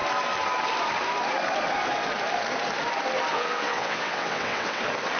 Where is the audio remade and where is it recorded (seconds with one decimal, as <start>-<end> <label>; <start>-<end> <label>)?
0.0-3.3 recorded; 3.3-4.8 remade; 4.8-5.2 recorded